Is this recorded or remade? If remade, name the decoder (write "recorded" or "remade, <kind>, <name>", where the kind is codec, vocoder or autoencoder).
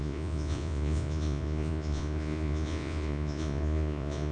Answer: remade, vocoder, Vocos